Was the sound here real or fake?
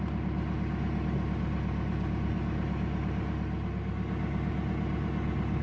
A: real